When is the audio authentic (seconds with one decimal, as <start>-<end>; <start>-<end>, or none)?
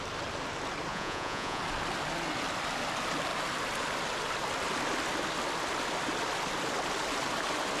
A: 0.0-0.9; 1.6-7.8